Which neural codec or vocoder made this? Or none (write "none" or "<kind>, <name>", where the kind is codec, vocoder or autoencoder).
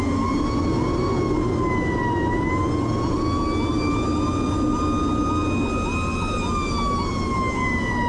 none